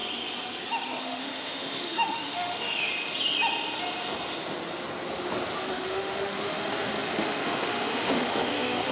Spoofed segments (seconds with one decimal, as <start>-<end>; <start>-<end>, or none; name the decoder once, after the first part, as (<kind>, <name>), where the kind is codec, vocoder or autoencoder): 1.0-2.9 (autoencoder, DAC-VAE); 5.7-8.9

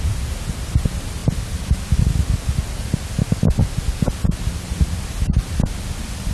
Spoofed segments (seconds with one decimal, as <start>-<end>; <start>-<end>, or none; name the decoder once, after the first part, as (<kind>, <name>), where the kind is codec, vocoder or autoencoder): none